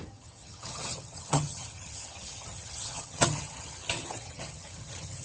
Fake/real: fake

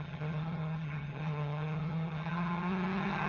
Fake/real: fake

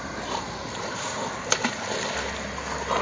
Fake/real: real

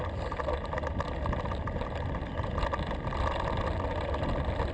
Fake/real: real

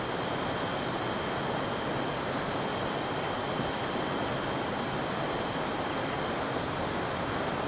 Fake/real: real